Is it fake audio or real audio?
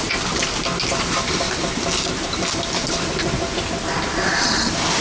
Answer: real